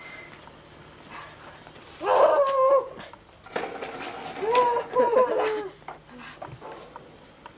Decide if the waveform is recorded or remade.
recorded